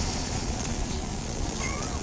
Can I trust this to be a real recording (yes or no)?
no